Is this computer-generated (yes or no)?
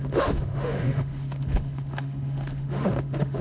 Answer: yes